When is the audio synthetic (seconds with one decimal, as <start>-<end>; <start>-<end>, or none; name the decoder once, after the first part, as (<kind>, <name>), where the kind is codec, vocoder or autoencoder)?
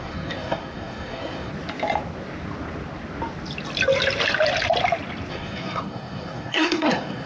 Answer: 0.0-1.5 (codec, SNAC); 5.3-7.3